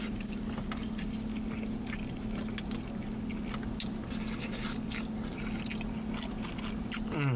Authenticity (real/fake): real